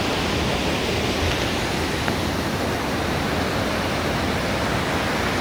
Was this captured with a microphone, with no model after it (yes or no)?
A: yes